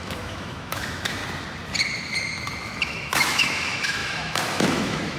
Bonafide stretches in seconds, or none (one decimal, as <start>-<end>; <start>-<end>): 1.2-2.6